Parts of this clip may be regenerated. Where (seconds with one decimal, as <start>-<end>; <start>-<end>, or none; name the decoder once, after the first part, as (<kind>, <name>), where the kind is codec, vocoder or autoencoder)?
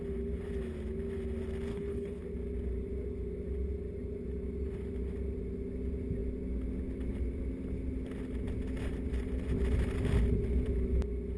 1.7-2.2 (codec, HILCodec)